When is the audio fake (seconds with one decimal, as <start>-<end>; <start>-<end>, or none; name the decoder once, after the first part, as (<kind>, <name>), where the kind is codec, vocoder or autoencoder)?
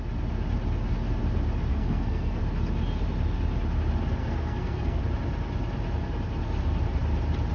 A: 1.7-2.4 (codec, SNAC); 4.2-5.0